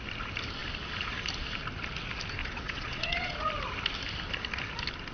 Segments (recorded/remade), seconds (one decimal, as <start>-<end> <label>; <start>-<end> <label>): 0.0-2.4 recorded; 2.4-3.5 remade; 3.5-5.1 recorded